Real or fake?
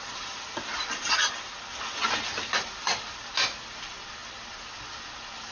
real